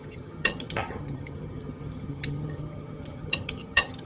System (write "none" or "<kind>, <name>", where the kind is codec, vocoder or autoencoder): vocoder, HiFi-GAN